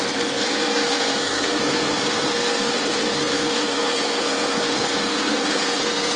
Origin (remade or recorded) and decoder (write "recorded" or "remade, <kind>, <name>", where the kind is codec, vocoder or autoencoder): remade, codec, SNAC